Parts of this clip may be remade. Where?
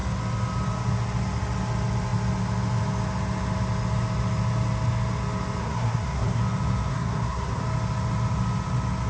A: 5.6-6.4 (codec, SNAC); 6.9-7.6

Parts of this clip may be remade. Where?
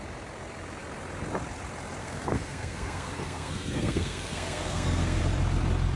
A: 2.0-5.2 (codec, SNAC)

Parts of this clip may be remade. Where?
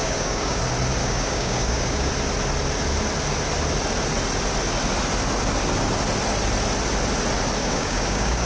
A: 0.0-0.6 (codec, DAC); 1.0-2.1; 7.6-8.5